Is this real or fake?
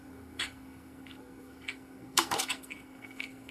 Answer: fake